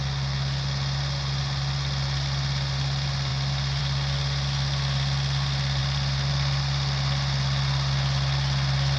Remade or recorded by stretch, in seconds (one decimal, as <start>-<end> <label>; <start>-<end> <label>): 0.0-9.0 recorded